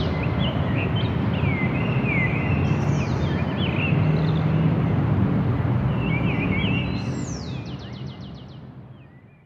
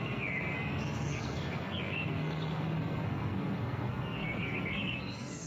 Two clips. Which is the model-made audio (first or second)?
second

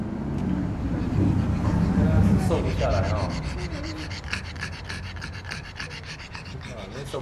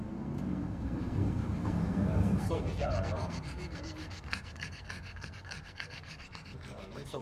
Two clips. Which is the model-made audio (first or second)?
second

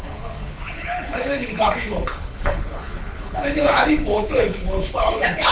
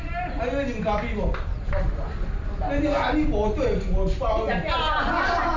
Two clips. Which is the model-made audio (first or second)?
first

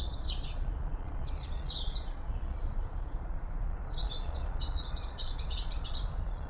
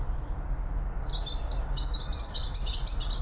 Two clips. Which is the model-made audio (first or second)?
first